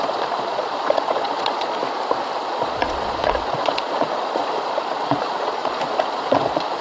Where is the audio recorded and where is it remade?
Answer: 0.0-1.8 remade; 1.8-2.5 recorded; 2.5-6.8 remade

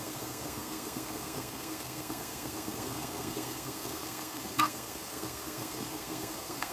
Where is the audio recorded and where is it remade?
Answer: 0.0-6.7 remade

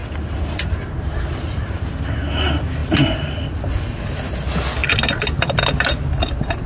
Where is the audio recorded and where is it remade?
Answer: 0.0-6.7 recorded

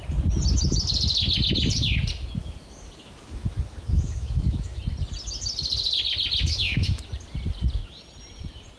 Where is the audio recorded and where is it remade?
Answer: 0.0-2.4 recorded; 2.4-4.8 remade; 4.8-6.4 recorded; 6.4-7.0 remade; 7.0-8.8 recorded

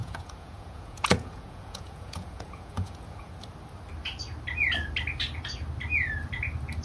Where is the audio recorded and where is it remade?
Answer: 0.0-3.3 remade; 3.3-6.8 recorded

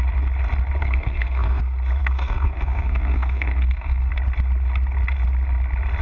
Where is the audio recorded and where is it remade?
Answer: 0.0-0.8 recorded; 0.8-1.6 remade; 1.6-2.0 recorded; 2.0-4.1 remade; 4.1-6.0 recorded